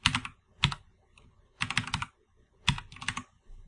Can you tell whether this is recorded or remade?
recorded